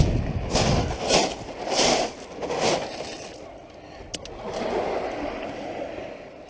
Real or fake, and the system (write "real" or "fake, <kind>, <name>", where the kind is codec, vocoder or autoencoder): real